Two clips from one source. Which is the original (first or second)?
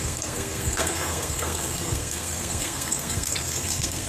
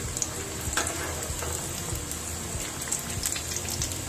second